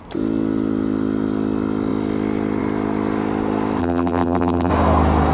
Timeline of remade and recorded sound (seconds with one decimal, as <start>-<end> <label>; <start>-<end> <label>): 0.0-3.8 recorded; 3.8-4.7 remade; 4.7-5.3 recorded